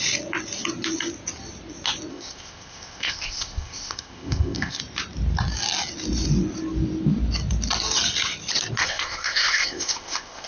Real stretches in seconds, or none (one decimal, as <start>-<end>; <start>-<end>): 0.0-2.1; 4.8-8.8